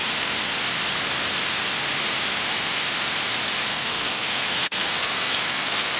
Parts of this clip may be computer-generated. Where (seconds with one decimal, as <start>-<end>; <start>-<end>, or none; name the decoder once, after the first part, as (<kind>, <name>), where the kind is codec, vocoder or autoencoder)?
3.7-6.0 (codec, SNAC)

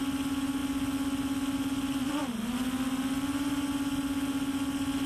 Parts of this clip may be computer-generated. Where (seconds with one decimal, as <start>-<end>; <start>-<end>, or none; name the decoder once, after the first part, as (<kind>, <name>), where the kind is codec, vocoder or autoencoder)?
none

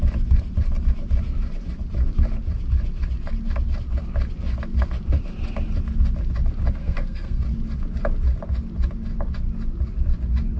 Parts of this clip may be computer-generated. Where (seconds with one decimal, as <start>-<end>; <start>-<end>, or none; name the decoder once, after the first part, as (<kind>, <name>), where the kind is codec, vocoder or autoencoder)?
6.8-7.4 (codec, SNAC)

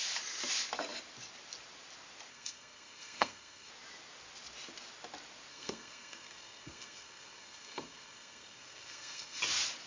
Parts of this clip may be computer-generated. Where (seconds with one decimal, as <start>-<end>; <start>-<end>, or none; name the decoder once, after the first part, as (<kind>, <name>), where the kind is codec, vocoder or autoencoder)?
2.3-3.7 (codec, SNAC); 5.5-9.4

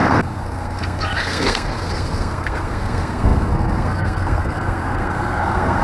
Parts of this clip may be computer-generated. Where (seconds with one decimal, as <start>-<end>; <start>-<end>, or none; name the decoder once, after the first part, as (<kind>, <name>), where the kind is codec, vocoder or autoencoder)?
0.0-5.8 (codec, SNAC)